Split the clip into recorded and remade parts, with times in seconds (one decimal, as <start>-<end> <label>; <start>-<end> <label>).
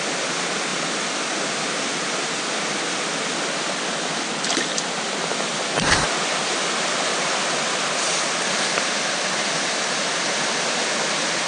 0.0-11.5 recorded